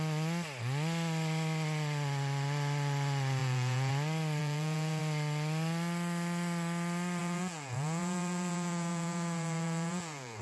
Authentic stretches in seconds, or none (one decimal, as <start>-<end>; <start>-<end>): 0.0-3.4; 3.9-4.4; 5.0-7.2